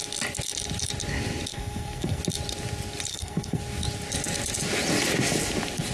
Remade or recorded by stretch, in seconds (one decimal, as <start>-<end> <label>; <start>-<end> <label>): 0.0-1.5 recorded; 1.5-2.2 remade; 2.2-3.1 recorded; 3.1-3.6 remade; 3.6-5.9 recorded